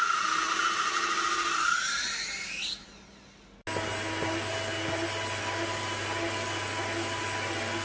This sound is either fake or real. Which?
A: real